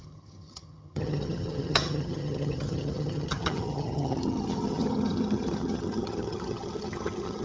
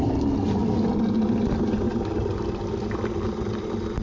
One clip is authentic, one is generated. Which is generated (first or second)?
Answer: first